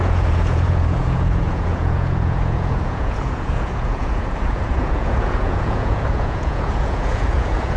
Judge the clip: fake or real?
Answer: fake